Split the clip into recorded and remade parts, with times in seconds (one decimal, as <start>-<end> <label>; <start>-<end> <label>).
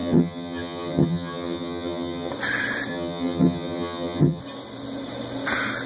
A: 0.0-2.3 remade; 2.3-2.9 recorded; 2.9-4.4 remade; 4.4-5.9 recorded